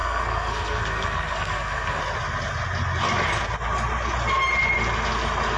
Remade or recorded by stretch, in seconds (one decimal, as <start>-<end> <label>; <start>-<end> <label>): 0.0-2.0 remade; 2.0-5.6 recorded